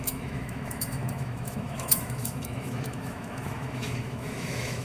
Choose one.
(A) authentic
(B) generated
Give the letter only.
B